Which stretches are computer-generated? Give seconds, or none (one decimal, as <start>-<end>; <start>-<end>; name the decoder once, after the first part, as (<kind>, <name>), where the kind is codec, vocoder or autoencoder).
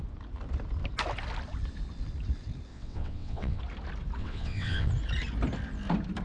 2.7-3.6 (vocoder, WaveNeXt); 4.2-4.9